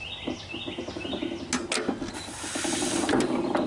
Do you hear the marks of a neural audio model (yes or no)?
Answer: no